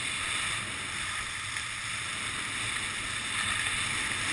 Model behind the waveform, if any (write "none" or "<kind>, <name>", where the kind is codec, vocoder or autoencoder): none